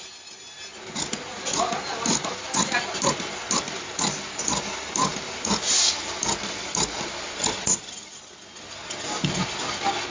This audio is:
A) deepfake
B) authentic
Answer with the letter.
B